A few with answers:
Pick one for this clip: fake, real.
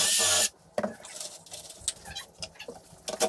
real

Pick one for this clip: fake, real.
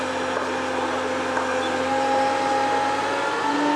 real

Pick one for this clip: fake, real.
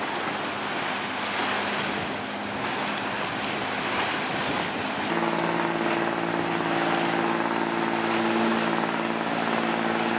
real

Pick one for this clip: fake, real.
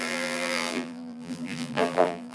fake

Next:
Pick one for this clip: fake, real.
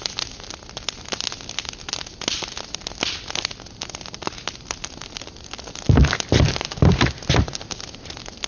real